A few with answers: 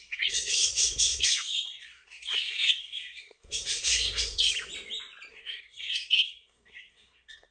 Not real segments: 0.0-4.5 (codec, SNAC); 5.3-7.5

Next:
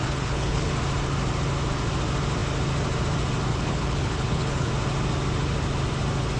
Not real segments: 0.0-0.7 (codec, HILCodec); 3.5-4.7

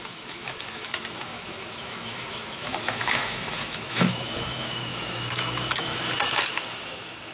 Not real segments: 0.0-7.3 (autoencoder, DAC-VAE)

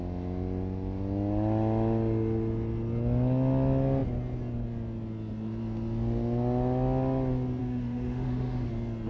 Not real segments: 7.6-8.7 (autoencoder, DAC-VAE)

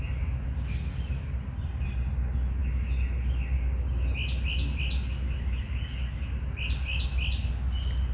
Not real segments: none

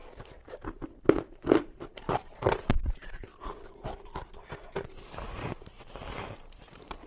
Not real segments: 0.0-3.3 (vocoder, BigVGAN v2); 5.4-7.1

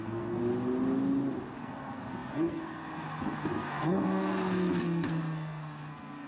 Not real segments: 0.0-0.4 (codec, SNAC); 1.6-6.3